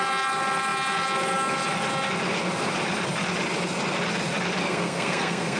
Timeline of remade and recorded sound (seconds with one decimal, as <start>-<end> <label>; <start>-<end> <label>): 0.0-4.6 recorded; 4.6-5.6 remade